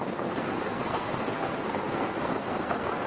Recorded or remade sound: remade